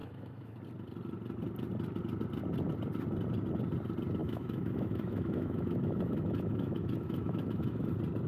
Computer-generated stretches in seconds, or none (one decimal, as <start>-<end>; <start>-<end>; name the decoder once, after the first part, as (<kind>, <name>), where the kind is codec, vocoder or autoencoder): 0.0-0.6 (autoencoder, DAC-VAE); 4.2-7.9